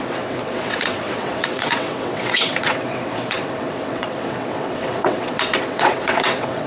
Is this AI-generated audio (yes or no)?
yes